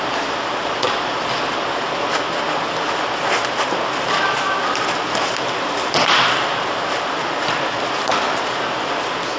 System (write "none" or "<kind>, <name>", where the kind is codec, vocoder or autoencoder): none